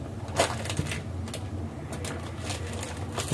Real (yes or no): yes